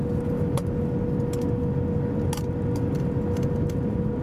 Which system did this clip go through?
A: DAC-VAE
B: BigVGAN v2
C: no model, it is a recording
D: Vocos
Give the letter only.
C